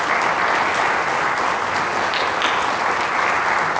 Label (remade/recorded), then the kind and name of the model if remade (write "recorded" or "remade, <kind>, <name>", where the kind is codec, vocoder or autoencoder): recorded